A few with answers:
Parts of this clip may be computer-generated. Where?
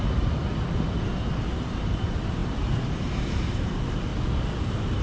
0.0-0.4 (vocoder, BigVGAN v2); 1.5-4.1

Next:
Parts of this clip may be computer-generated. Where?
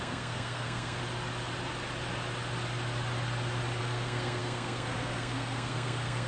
0.0-1.0 (codec, SNAC); 3.8-6.3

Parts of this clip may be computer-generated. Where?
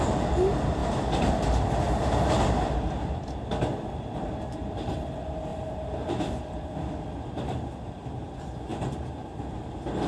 0.8-1.7 (vocoder, BigVGAN v2); 5.5-6.9; 8.7-9.6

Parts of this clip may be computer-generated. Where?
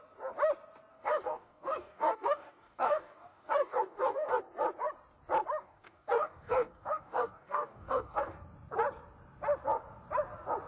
0.9-4.4 (codec, DAC); 5.6-8.4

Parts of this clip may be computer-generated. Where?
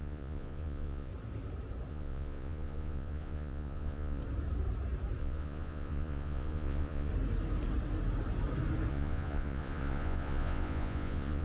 0.0-1.1 (vocoder, Vocos); 1.9-4.2; 5.2-7.1; 8.9-11.4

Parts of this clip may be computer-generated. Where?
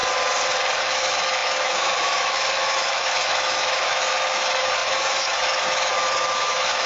0.8-6.9 (autoencoder, DAC-VAE)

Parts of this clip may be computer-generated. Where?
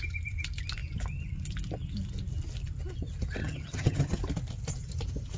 3.4-4.2 (vocoder, HiFi-GAN)